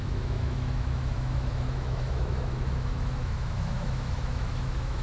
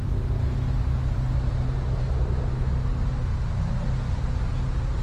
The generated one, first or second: first